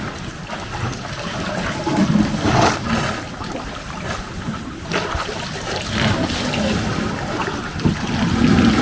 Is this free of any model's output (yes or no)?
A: yes